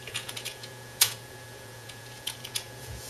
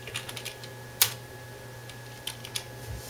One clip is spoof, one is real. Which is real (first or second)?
second